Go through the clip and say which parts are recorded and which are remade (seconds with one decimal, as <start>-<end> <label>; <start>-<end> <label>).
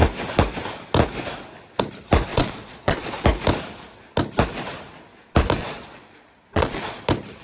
0.0-2.3 recorded; 2.3-3.1 remade; 3.1-5.6 recorded; 5.6-7.0 remade; 7.0-7.4 recorded